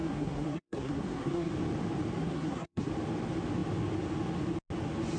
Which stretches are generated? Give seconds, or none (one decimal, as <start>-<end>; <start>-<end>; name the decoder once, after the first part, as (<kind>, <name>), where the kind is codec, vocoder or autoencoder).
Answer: 0.0-1.5 (codec, SNAC); 2.2-2.9